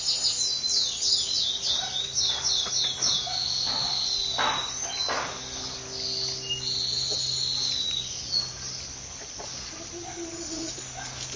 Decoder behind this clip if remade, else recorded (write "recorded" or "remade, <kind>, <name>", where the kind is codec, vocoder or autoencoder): recorded